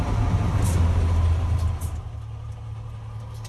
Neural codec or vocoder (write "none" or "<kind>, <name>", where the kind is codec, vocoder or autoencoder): none